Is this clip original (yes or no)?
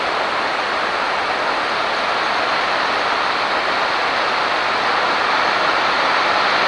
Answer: yes